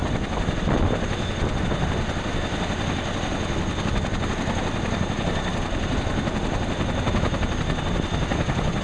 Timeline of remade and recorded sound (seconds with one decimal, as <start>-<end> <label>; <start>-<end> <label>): 0.0-8.8 recorded